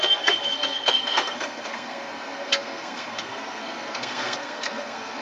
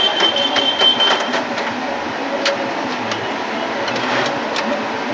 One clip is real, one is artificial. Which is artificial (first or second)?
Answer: first